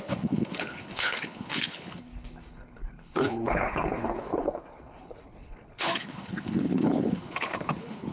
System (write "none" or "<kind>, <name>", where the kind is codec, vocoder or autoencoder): codec, HILCodec